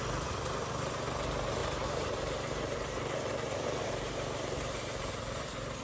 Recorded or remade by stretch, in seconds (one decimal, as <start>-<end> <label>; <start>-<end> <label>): 0.0-1.6 recorded; 1.6-5.1 remade; 5.1-5.8 recorded

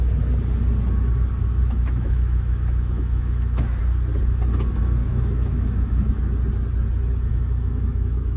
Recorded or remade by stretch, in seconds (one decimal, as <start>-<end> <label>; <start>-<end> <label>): 0.0-1.6 recorded; 1.6-3.8 remade; 3.8-5.0 recorded; 5.0-6.1 remade; 6.1-7.3 recorded; 7.3-8.4 remade

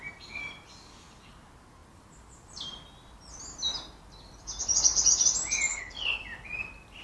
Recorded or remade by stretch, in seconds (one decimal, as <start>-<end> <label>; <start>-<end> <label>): 0.0-5.7 recorded; 5.7-6.2 remade; 6.2-7.0 recorded

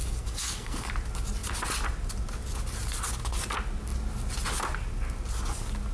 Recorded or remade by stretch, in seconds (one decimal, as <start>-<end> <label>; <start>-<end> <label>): 0.0-0.9 remade; 0.9-5.9 recorded